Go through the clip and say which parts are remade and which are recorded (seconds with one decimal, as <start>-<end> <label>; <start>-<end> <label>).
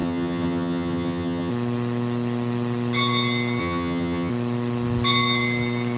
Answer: 0.0-1.5 remade; 1.5-3.6 recorded; 3.6-4.3 remade; 4.3-6.0 recorded